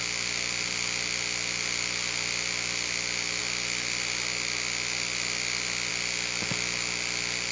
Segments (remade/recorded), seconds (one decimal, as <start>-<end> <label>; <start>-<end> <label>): 0.0-7.5 recorded

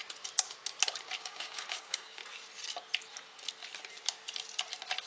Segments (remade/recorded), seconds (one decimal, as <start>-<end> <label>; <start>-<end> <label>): 0.0-1.2 recorded; 1.2-2.2 remade; 2.2-5.1 recorded

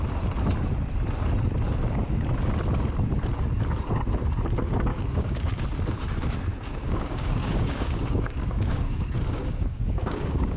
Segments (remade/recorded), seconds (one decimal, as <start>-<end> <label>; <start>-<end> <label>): 0.0-4.9 recorded; 4.9-5.6 remade; 5.6-6.5 recorded; 6.5-10.6 remade

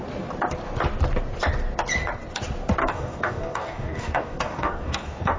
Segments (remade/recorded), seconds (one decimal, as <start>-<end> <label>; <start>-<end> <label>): 0.0-2.8 recorded; 2.8-5.4 remade

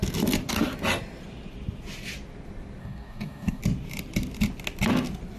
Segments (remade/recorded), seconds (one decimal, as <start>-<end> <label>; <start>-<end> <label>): 0.0-2.8 recorded; 2.8-3.6 remade; 3.6-5.4 recorded

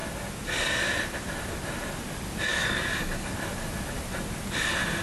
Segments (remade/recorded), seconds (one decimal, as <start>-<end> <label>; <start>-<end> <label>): 0.0-2.5 recorded; 2.5-3.3 remade; 3.3-5.0 recorded